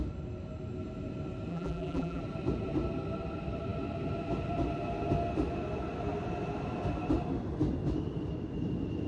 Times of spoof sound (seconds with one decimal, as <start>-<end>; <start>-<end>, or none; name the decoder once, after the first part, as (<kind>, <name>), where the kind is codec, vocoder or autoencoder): 1.5-2.2 (vocoder, BigVGAN v2)

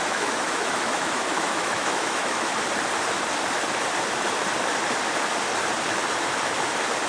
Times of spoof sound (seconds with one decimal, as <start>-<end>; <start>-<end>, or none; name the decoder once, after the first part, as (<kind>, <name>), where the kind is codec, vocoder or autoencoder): 0.0-2.5 (autoencoder, DAC-VAE)

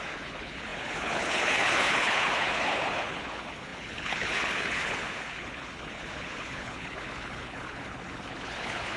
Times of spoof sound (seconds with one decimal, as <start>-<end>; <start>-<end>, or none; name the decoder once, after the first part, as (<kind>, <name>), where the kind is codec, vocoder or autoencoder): 0.0-9.0 (codec, HILCodec)